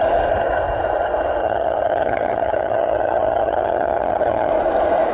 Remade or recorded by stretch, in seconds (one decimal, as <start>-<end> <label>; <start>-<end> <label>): 0.0-1.4 recorded; 1.4-4.5 remade; 4.5-5.1 recorded